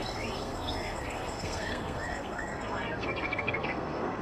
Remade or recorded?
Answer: remade